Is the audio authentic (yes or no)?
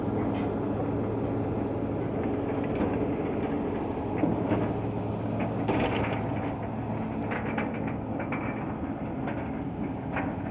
yes